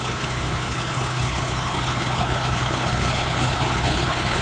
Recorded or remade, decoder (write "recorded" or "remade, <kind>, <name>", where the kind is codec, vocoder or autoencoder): remade, codec, HILCodec